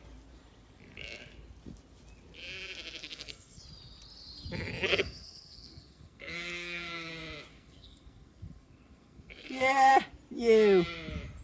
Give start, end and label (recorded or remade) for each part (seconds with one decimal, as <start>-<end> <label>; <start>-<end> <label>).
0.0-3.0 recorded; 3.0-3.6 remade; 3.6-4.9 recorded; 4.9-7.1 remade; 7.1-7.5 recorded; 7.5-9.9 remade; 9.9-11.4 recorded